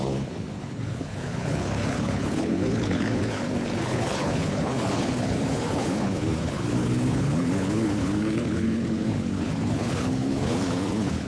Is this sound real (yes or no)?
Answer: no